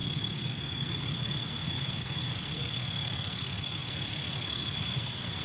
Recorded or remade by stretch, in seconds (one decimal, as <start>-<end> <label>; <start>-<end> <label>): 0.0-5.4 remade